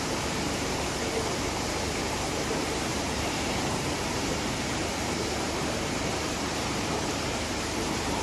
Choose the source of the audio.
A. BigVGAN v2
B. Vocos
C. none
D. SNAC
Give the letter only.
A